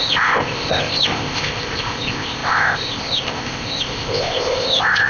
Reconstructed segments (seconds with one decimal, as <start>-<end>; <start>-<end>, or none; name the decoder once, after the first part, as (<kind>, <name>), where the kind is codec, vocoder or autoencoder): 0.0-5.1 (codec, ZipCodec)